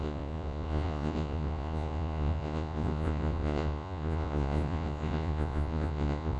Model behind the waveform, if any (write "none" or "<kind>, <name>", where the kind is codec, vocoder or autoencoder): vocoder, Vocos